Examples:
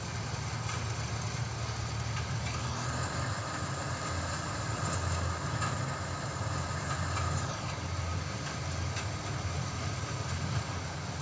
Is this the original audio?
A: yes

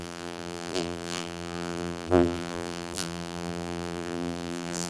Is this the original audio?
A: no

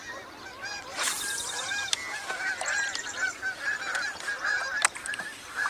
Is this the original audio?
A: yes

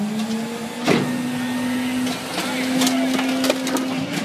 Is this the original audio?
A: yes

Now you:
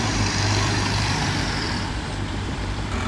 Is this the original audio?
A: no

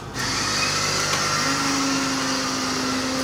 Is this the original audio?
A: yes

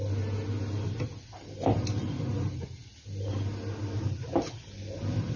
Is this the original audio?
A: yes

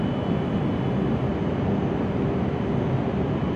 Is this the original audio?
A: yes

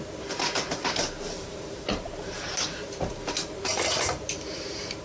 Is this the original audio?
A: no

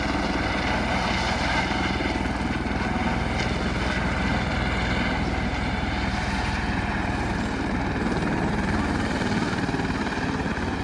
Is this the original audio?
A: yes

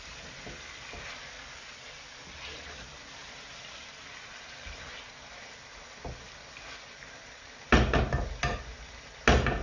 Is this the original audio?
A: yes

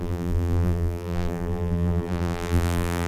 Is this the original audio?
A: no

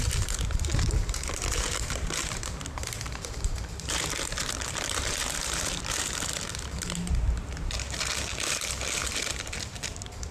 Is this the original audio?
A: no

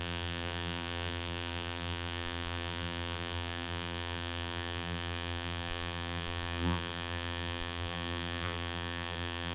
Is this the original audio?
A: no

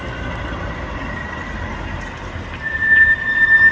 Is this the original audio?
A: yes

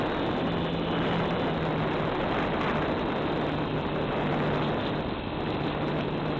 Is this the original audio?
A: yes